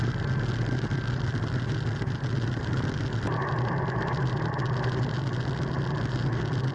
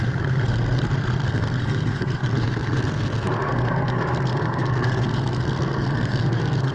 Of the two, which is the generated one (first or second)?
second